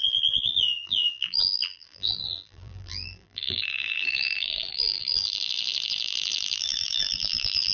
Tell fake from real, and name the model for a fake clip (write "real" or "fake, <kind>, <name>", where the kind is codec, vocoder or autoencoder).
fake, vocoder, BigVGAN v2